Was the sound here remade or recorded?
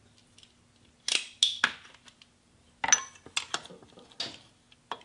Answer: recorded